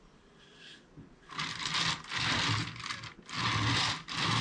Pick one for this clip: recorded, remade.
recorded